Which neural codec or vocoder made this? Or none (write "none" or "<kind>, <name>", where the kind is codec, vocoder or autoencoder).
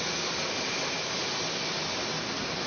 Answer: none